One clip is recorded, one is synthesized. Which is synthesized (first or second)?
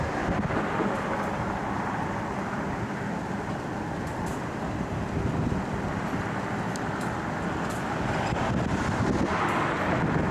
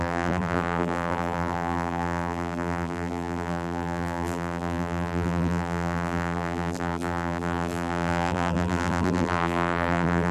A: second